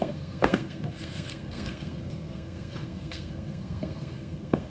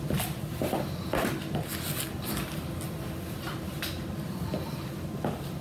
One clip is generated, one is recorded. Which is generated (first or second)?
first